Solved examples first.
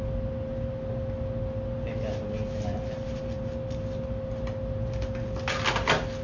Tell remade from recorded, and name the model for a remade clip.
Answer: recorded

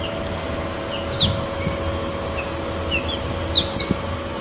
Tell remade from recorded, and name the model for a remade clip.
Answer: recorded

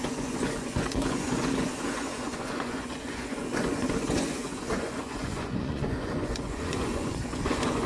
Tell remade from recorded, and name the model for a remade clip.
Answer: remade, vocoder, Vocos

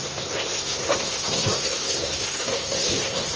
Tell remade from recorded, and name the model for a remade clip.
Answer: remade, codec, SNAC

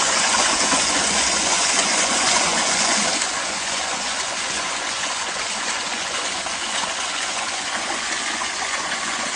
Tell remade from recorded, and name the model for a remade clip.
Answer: remade, vocoder, Vocos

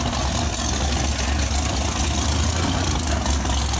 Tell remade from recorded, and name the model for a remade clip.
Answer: recorded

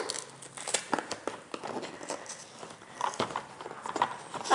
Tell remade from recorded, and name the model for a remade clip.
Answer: recorded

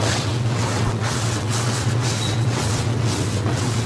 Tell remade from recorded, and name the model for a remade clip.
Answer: remade, vocoder, WaveNeXt